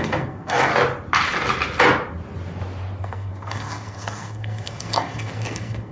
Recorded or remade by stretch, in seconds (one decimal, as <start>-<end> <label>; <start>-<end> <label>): 0.0-0.7 remade; 0.7-3.0 recorded; 3.0-5.9 remade